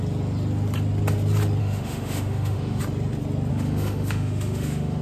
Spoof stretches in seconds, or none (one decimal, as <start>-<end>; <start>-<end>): 1.6-2.8; 3.5-5.0